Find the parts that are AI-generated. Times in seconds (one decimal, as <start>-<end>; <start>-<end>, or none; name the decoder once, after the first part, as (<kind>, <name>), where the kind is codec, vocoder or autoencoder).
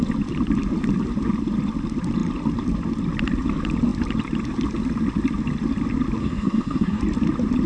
6.2-7.0 (codec, SNAC)